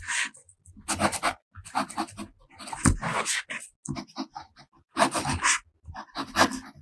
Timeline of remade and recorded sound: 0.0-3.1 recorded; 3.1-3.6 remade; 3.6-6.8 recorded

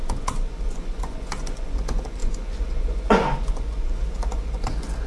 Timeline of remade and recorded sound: 0.0-5.1 remade